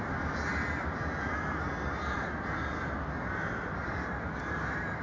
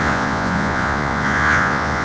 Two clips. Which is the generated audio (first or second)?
second